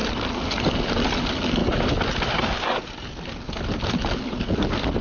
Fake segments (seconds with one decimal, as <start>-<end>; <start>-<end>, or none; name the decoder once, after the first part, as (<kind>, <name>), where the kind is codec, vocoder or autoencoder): none

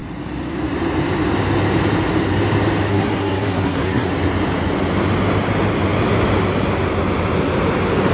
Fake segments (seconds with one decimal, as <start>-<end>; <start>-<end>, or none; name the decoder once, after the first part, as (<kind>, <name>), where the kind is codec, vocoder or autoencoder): 2.9-4.1 (codec, SNAC)

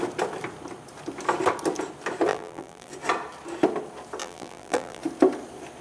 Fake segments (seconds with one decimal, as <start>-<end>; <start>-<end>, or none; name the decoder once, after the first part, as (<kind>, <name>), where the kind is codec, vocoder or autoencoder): 2.3-2.9 (vocoder, BigVGAN v2); 4.2-5.0

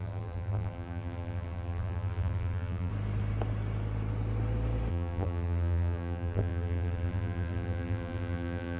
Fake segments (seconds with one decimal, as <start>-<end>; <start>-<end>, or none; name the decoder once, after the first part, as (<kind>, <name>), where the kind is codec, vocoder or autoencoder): 0.0-2.9 (vocoder, BigVGAN v2); 4.9-8.8

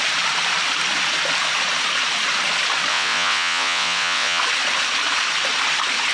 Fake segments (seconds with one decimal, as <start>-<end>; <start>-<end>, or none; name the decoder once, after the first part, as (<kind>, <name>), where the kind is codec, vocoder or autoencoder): 2.9-4.4 (vocoder, WaveNeXt)

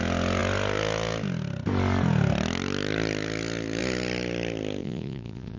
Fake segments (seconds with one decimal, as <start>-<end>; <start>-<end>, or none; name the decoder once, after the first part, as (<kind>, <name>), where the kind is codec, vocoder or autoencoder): 4.8-5.6 (vocoder, Vocos)